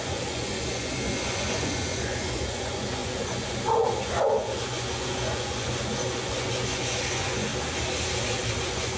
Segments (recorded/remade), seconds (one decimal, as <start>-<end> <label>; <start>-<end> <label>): 0.0-7.5 remade; 7.5-8.6 recorded; 8.6-9.0 remade